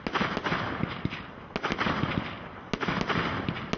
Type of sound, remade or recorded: recorded